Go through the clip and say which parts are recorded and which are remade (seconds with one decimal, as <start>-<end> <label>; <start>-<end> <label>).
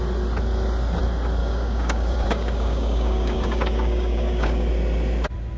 0.0-1.4 recorded; 1.4-4.7 remade; 4.7-5.6 recorded